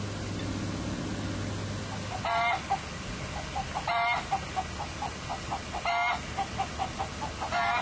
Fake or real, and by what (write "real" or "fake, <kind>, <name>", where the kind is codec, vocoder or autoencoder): real